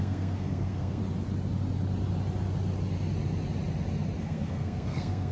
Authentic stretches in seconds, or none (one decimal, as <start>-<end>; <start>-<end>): 1.0-4.2